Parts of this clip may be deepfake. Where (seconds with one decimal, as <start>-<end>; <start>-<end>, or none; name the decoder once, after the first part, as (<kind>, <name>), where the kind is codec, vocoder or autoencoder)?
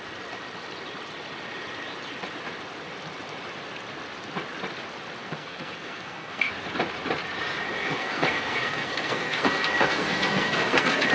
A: 5.2-6.5 (codec, SNAC); 7.8-11.1